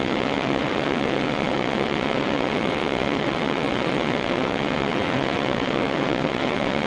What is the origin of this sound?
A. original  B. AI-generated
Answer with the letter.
B